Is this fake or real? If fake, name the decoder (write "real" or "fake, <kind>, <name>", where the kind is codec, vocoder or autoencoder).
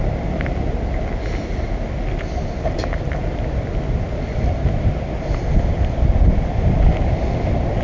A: real